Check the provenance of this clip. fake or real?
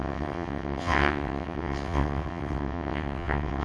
fake